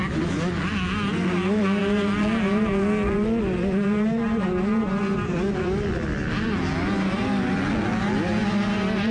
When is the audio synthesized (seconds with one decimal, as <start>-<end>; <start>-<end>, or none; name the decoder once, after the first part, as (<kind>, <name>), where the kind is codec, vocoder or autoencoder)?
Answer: none